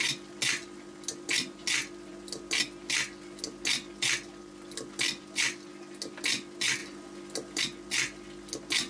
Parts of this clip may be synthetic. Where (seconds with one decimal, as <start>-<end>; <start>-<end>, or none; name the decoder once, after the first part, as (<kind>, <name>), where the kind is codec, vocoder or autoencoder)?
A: none

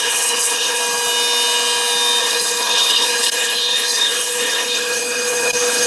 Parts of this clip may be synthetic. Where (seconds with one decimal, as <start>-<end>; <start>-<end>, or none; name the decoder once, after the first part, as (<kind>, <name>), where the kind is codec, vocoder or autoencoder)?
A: 0.0-0.8 (codec, HILCodec); 2.2-5.9

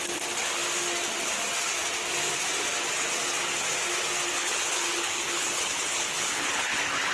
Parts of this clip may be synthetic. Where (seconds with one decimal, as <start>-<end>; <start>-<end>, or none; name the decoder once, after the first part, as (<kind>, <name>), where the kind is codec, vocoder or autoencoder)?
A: 4.4-7.1 (codec, HILCodec)

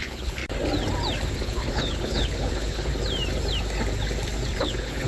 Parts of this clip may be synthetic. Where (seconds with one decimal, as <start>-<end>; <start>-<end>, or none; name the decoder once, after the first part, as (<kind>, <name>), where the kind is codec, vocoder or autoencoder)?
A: 0.0-0.4 (codec, HILCodec); 1.3-2.9; 4.6-5.1

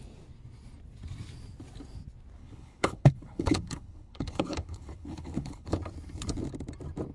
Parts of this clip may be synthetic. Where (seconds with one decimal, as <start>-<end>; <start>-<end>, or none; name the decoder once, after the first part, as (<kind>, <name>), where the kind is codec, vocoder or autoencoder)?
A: 2.4-5.8 (codec, HILCodec)

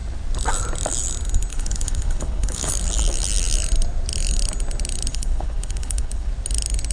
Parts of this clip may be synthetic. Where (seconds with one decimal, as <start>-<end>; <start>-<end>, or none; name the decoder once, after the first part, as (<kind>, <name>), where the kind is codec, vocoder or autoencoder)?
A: 1.5-2.7 (codec, HILCodec); 5.1-6.3

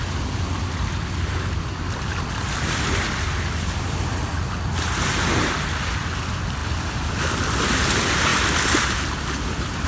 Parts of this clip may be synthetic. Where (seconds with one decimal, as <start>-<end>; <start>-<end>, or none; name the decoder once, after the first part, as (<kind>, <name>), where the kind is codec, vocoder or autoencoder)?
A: none

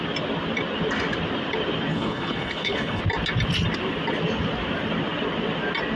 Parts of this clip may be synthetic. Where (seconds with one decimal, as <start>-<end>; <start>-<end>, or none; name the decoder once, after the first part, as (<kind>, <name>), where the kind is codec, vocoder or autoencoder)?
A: 1.9-3.0 (codec, HILCodec)